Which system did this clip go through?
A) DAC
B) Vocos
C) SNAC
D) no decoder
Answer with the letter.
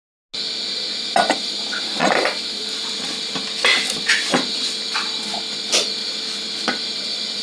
D